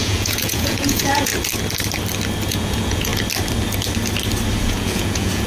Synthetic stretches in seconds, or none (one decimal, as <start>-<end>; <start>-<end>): 0.0-1.3; 2.5-3.1; 4.6-5.5

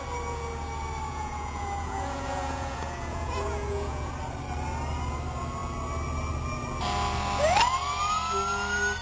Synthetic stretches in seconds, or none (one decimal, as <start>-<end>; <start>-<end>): 1.1-4.1

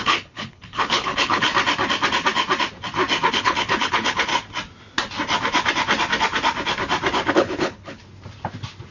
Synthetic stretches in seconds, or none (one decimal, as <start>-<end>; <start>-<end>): 0.0-1.5; 3.3-4.3; 7.3-8.0